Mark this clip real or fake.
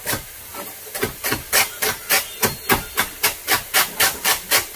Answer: real